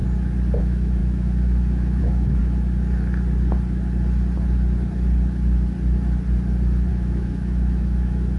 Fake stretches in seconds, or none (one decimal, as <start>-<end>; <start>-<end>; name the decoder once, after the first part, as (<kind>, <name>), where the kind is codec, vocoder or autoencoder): 0.6-2.4 (autoencoder, DAC-VAE); 6.9-8.4